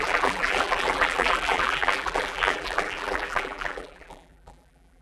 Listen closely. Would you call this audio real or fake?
fake